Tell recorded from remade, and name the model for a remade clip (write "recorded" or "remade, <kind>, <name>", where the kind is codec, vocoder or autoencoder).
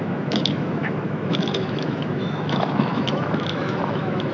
remade, autoencoder, DAC-VAE